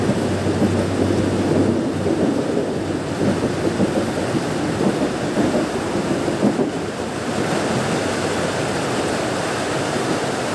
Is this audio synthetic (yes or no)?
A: no